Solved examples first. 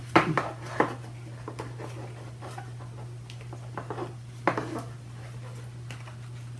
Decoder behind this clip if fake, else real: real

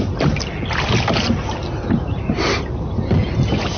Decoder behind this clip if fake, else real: real